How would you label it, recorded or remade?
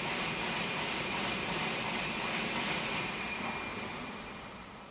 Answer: recorded